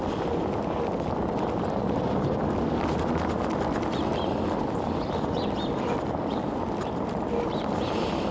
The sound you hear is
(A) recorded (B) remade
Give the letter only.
A